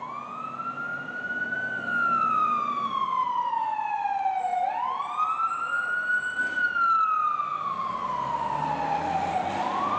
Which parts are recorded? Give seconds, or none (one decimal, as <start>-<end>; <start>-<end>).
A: 0.0-0.9; 1.6-2.4; 3.5-10.0